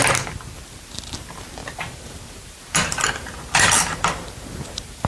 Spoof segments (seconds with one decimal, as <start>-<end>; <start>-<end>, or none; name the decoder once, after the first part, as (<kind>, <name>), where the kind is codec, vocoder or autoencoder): 1.6-5.1 (vocoder, BigVGAN v2)